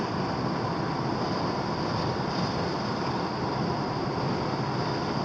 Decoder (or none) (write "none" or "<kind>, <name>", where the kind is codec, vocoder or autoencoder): none